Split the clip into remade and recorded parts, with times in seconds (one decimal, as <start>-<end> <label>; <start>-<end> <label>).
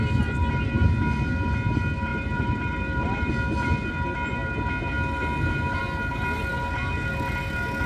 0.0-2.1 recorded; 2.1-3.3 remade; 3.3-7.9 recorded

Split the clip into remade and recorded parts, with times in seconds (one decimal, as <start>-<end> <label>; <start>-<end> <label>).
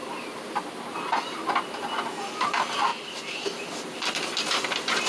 0.0-5.1 recorded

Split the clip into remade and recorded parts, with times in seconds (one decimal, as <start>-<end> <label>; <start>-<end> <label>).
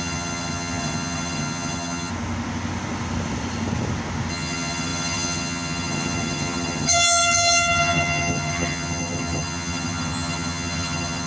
0.0-2.1 remade; 2.1-4.3 recorded; 4.3-11.3 remade